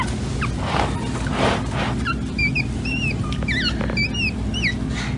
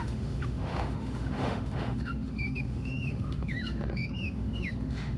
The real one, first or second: first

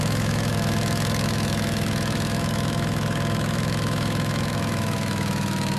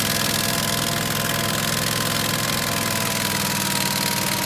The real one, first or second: second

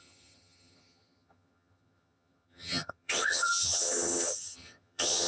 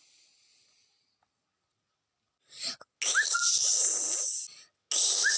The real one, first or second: second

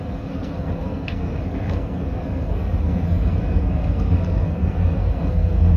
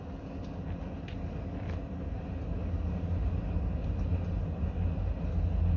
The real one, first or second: second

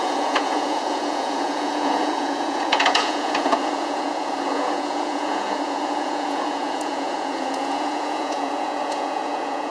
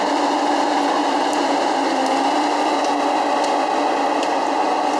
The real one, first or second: second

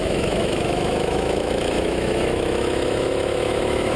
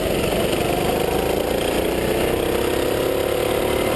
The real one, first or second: second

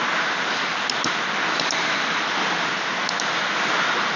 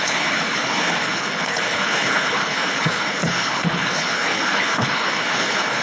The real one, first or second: first